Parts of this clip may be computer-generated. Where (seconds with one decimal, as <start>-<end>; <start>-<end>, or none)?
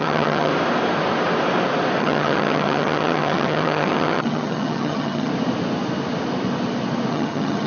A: 0.0-0.5; 2.0-5.3; 7.1-7.7